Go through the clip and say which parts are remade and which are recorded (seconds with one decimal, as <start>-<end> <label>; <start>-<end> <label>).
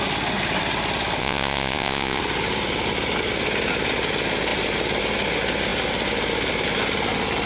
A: 0.0-1.2 recorded; 1.2-2.2 remade; 2.2-7.5 recorded